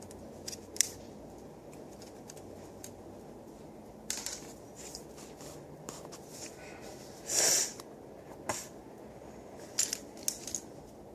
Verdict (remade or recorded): recorded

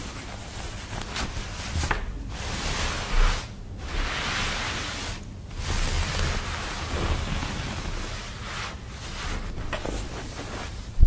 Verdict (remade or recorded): recorded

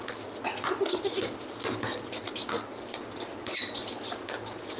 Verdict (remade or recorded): recorded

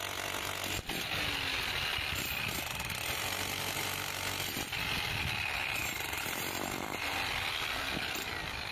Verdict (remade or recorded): recorded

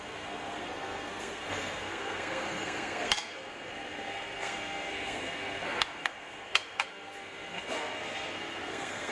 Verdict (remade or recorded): remade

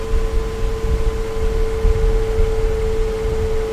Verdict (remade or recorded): recorded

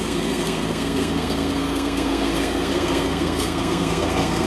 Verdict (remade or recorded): remade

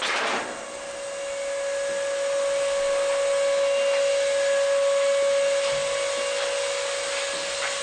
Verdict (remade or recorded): recorded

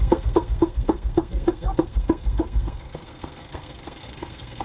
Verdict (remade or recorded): remade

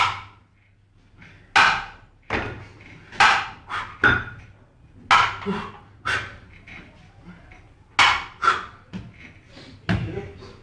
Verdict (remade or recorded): recorded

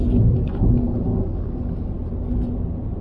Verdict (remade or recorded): recorded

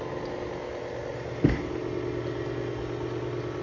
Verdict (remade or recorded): recorded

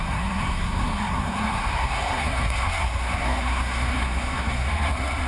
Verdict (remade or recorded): remade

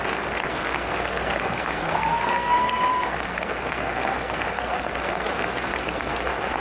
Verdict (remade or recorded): remade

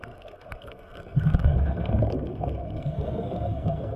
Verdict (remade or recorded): remade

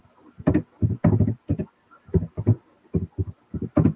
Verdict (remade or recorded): recorded